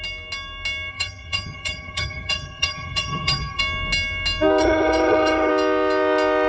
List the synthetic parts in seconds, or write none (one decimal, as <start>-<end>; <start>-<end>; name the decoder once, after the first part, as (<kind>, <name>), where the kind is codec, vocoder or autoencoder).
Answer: 0.9-3.6 (vocoder, HiFi-GAN); 4.6-5.5